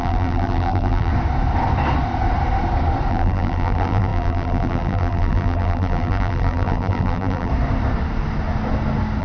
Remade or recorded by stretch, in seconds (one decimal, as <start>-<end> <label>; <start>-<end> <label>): 0.0-1.1 remade; 1.1-3.1 recorded; 3.1-7.5 remade; 7.5-9.2 recorded